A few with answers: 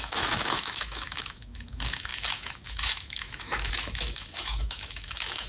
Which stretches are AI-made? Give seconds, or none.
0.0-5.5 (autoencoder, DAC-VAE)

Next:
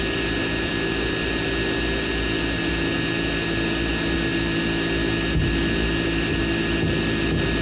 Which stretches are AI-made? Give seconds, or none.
none